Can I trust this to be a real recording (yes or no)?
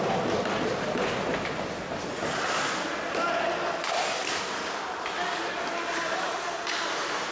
yes